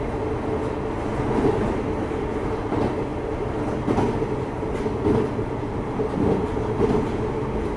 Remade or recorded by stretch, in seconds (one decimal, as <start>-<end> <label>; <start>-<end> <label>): 0.0-7.8 recorded